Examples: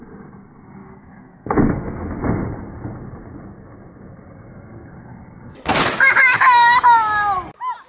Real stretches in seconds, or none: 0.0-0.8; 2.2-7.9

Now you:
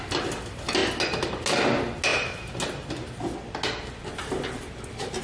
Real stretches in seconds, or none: 0.0-5.2

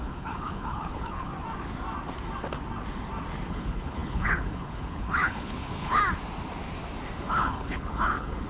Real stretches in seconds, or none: 1.3-3.5; 6.0-7.2